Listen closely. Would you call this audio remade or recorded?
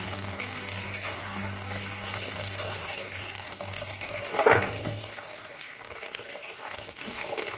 remade